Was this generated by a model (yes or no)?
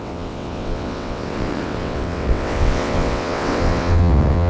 yes